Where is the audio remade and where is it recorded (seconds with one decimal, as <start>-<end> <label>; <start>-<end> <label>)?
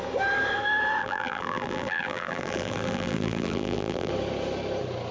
0.0-1.0 recorded; 1.0-4.1 remade; 4.1-5.1 recorded